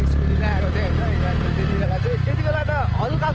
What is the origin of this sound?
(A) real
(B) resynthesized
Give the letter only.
A